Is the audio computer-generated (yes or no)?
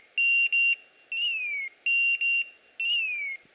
no